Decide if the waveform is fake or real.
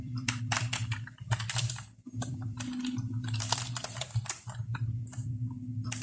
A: fake